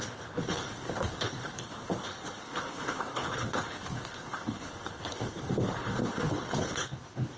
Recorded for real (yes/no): no